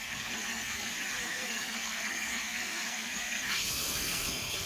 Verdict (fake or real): fake